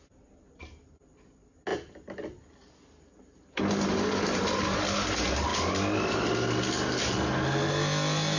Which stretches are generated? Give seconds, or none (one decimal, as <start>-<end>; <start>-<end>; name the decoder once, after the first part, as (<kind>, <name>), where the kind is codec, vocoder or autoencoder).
none